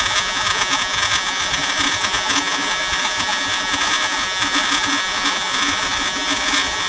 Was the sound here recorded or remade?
remade